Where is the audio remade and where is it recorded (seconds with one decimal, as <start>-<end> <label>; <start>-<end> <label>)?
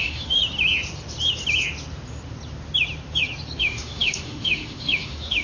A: 0.0-0.4 remade; 0.4-3.6 recorded; 3.6-5.4 remade